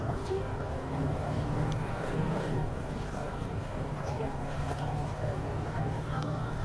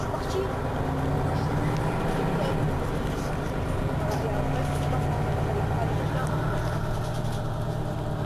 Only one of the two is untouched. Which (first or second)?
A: second